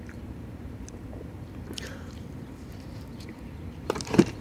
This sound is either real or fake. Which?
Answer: fake